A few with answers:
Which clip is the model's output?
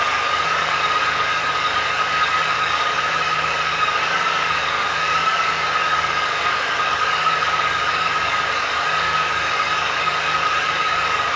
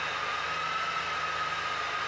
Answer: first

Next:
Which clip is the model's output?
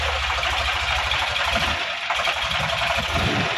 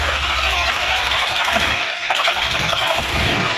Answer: second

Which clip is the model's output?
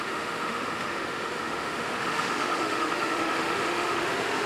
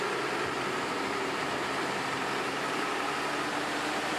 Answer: first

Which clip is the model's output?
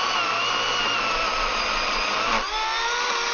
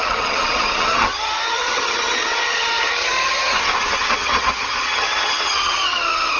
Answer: second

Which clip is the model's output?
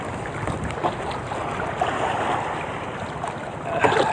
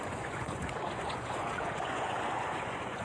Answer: second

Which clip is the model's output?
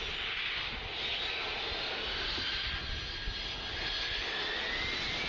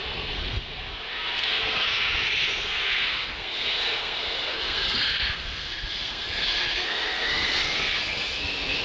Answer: second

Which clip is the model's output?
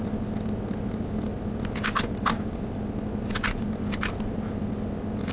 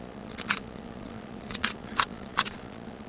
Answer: second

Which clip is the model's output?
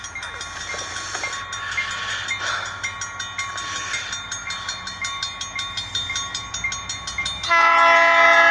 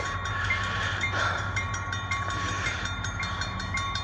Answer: second